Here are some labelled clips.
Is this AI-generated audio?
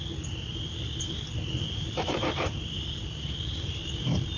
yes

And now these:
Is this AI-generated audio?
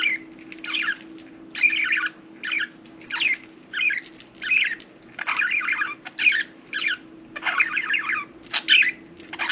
no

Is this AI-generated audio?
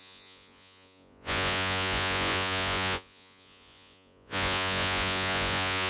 yes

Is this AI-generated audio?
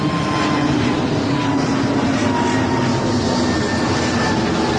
no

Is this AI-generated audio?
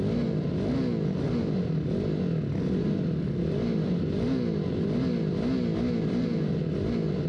no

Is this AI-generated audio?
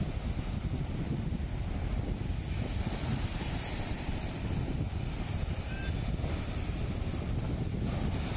no